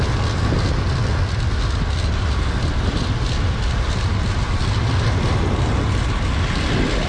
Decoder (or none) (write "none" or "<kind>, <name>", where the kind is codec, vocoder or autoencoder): none